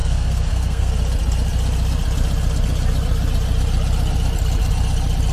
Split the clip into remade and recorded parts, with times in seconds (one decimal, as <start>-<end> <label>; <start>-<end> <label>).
0.0-0.9 remade; 0.9-5.3 recorded